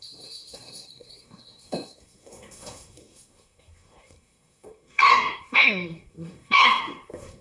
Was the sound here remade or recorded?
remade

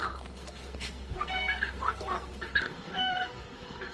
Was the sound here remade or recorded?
remade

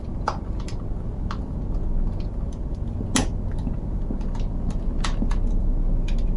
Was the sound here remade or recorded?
recorded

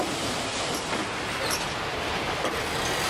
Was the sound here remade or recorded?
recorded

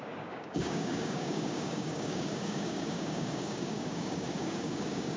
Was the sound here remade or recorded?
remade